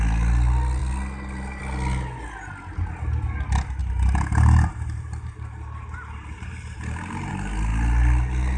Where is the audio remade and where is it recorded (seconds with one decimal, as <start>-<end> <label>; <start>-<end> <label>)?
0.0-3.8 recorded; 3.8-7.3 remade; 7.3-8.6 recorded